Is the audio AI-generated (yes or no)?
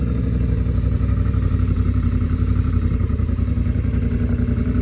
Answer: yes